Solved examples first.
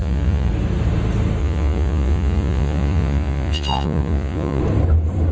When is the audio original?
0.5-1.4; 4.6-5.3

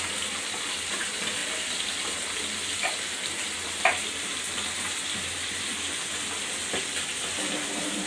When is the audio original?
0.0-8.1